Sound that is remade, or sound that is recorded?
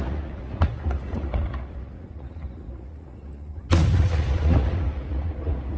remade